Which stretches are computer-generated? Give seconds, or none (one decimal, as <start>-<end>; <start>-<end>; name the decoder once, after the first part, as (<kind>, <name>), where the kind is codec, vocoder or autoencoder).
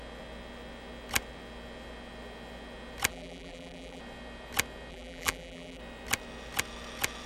3.1-4.0 (vocoder, BigVGAN v2); 4.9-5.8